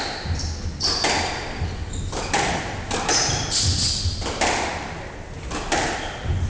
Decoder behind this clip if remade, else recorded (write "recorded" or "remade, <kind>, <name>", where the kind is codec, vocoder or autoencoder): recorded